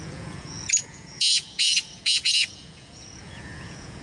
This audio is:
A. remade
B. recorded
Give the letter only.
A